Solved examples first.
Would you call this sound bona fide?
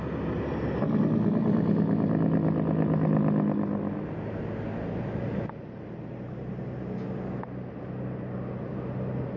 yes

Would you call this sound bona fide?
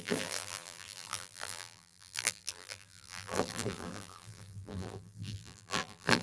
no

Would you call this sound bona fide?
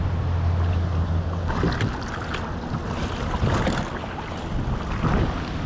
yes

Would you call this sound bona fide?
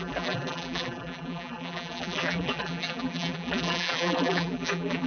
no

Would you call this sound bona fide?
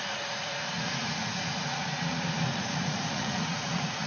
no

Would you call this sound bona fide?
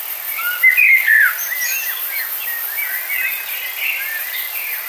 yes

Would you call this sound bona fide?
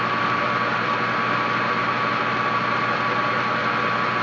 yes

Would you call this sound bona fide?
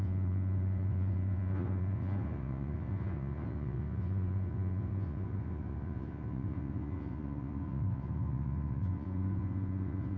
no